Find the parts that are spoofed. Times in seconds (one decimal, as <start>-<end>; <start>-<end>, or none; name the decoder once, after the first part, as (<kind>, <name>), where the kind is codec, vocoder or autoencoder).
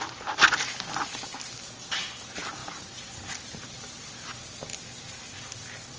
none